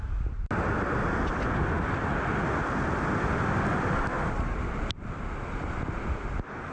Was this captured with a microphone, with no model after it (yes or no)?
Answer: yes